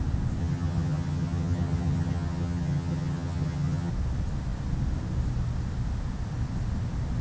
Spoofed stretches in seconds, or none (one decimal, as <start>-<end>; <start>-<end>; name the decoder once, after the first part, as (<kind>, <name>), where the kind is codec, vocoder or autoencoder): 0.4-3.9 (vocoder, HiFi-GAN)